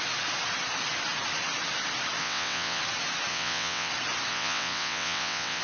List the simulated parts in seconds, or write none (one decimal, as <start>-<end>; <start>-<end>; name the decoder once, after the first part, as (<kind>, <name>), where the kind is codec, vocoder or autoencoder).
2.2-2.8 (vocoder, WaveNeXt); 3.3-3.9; 4.3-5.6